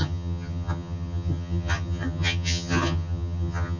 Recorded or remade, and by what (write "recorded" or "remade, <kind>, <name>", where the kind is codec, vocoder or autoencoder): remade, vocoder, HiFi-GAN